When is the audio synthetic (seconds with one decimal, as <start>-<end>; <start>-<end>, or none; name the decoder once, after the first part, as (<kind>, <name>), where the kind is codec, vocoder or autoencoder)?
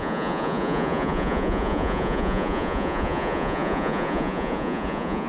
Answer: 0.0-5.3 (vocoder, Vocos)